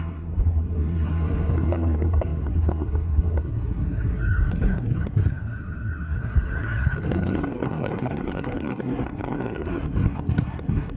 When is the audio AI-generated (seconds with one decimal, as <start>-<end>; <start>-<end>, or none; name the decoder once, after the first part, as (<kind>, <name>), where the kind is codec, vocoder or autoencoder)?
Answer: 0.0-11.0 (codec, SNAC)

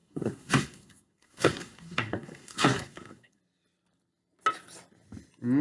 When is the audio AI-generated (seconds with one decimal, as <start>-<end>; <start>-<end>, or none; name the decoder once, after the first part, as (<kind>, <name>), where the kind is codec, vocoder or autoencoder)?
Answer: 0.0-3.4 (codec, SNAC)

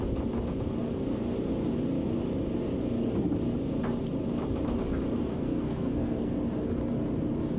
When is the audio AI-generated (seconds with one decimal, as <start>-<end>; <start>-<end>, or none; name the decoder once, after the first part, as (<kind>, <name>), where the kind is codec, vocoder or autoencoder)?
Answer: 5.3-6.3 (codec, SNAC)

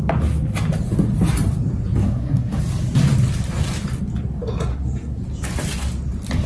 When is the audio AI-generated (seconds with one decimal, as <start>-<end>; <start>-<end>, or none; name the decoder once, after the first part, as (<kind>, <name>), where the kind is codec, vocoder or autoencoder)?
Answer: 2.0-2.6 (codec, SNAC); 4.7-5.2